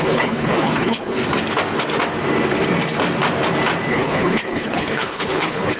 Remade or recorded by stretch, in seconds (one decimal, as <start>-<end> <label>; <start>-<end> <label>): 0.0-1.2 remade; 1.2-3.9 recorded; 3.9-5.8 remade